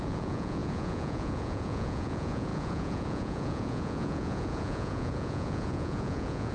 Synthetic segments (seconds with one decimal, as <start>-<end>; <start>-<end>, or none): 0.0-6.5